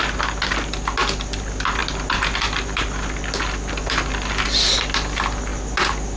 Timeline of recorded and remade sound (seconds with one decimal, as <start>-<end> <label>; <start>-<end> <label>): 0.0-6.2 recorded